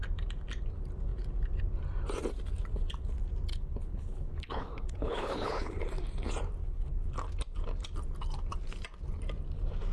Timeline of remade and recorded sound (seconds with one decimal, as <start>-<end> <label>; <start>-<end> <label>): 0.0-3.5 recorded; 3.5-5.8 remade; 5.8-6.6 recorded; 6.6-7.1 remade; 7.1-9.9 recorded